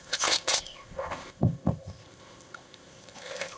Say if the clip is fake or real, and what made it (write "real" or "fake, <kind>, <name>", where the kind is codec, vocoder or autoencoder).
fake, codec, ZipCodec